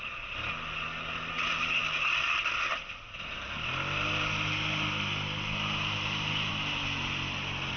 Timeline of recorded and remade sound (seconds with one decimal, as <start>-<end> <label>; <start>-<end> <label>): 0.0-7.8 recorded